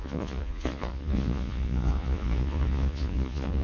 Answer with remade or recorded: remade